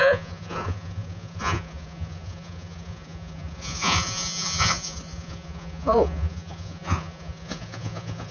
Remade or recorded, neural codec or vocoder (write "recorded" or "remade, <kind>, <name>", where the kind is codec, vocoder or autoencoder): remade, vocoder, Vocos